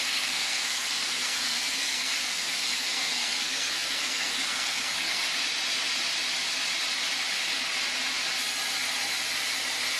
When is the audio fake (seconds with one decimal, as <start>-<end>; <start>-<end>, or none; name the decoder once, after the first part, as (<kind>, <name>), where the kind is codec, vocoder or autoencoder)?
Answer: 0.0-5.2 (codec, SNAC)